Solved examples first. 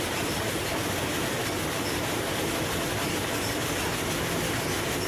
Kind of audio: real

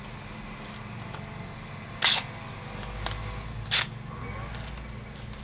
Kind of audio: real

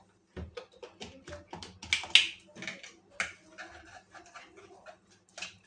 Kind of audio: real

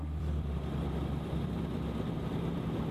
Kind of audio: fake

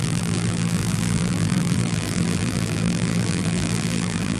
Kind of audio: fake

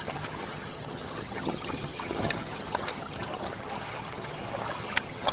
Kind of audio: fake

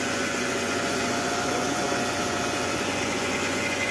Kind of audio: fake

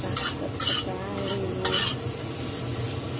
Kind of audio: real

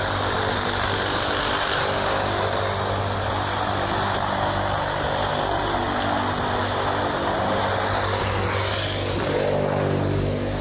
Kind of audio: real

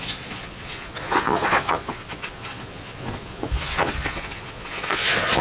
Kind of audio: fake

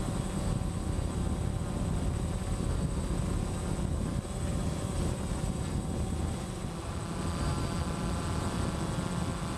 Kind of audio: real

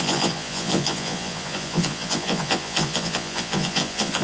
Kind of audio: fake